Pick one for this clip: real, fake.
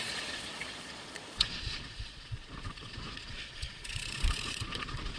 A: fake